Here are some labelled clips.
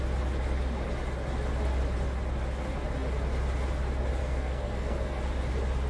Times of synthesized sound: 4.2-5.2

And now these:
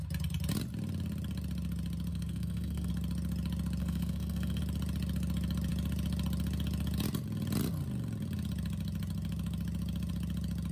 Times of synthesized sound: 2.1-2.9; 3.8-4.6

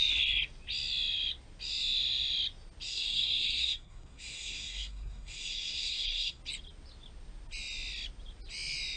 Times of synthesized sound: 2.9-6.4

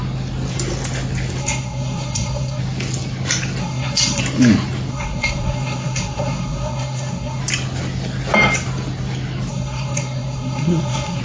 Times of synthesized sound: 1.4-2.6; 3.6-4.2; 4.9-7.4; 9.5-11.2

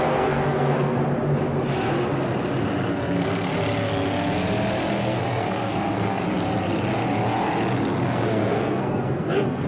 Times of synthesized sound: 0.0-1.0; 2.9-3.5; 4.9-6.2; 8.0-9.7

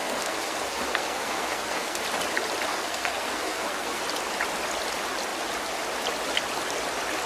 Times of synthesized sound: 0.0-2.0; 2.7-4.0